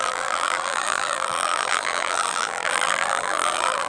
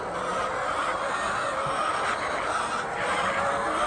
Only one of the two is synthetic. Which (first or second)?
first